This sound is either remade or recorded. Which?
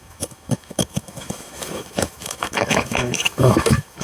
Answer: remade